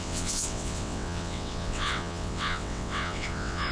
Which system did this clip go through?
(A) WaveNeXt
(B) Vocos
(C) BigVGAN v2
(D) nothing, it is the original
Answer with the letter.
A